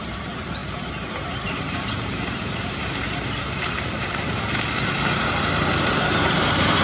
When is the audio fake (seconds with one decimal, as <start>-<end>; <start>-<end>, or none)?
0.0-6.8